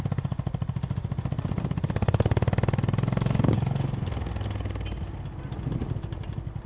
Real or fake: real